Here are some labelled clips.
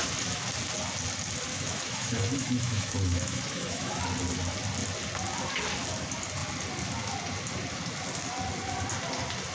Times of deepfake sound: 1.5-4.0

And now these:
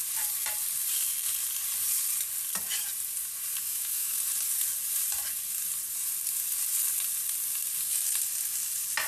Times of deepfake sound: 3.6-4.1

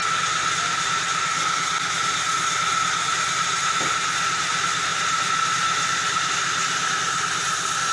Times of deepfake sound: none

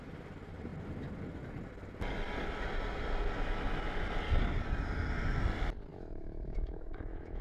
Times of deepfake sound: 5.9-7.4

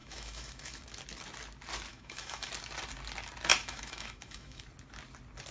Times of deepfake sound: 0.0-0.8; 1.9-2.5; 3.5-4.6

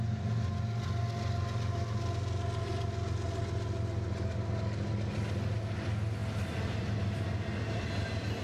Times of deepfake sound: none

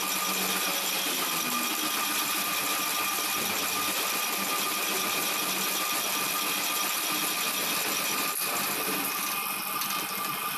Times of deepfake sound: none